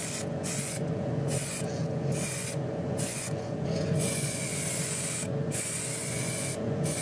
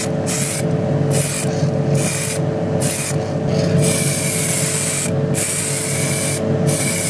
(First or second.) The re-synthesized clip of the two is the first